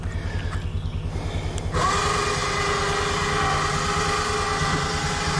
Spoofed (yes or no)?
no